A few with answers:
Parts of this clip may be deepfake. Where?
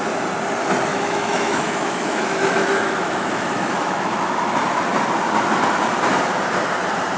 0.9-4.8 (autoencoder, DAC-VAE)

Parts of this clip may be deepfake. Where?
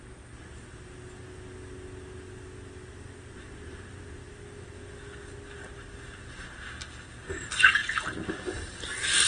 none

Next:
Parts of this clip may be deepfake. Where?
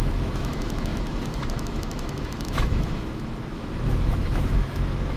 0.0-5.2 (autoencoder, DAC-VAE)